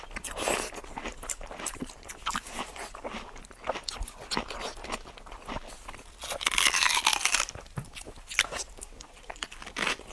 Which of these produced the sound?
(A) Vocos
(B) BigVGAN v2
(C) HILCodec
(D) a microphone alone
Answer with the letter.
D